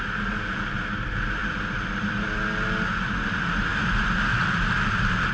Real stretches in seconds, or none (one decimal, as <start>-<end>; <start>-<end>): 0.0-5.3